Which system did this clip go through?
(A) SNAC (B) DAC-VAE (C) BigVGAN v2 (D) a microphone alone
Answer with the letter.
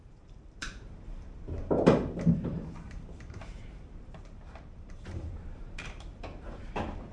C